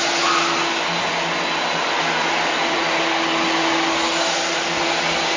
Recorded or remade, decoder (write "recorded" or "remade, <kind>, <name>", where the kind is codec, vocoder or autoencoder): recorded